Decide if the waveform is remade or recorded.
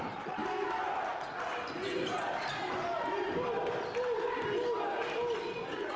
recorded